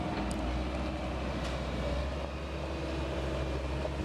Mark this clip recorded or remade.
recorded